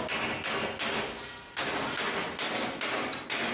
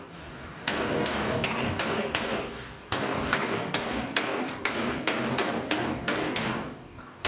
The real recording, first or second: first